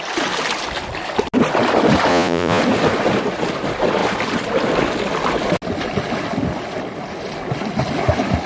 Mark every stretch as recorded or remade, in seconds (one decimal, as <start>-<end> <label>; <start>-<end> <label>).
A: 0.0-2.1 recorded; 2.1-2.6 remade; 2.6-8.5 recorded